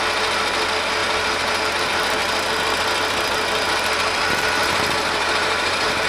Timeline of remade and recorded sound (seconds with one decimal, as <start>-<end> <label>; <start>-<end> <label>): 0.0-2.2 recorded; 2.2-3.1 remade; 3.1-4.6 recorded; 4.6-6.1 remade